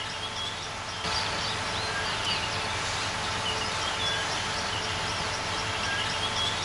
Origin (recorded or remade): recorded